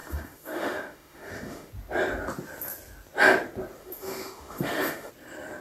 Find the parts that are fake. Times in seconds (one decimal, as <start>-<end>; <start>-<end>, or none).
0.0-1.7; 3.8-5.1